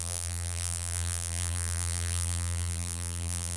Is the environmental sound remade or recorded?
remade